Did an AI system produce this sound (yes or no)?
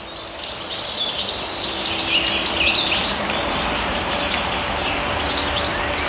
no